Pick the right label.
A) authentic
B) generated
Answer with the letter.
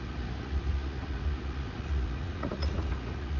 B